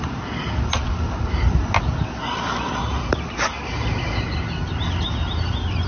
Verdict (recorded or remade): recorded